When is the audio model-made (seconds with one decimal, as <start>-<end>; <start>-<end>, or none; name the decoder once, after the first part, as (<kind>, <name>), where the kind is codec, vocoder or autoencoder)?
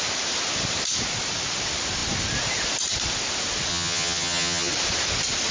3.7-4.7 (vocoder, HiFi-GAN)